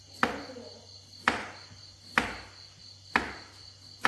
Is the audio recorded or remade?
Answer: recorded